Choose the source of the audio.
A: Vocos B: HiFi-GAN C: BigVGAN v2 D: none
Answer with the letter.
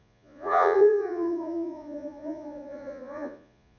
A